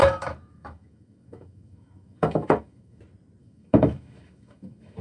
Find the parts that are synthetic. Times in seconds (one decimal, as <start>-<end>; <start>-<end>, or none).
0.0-3.0; 3.4-5.0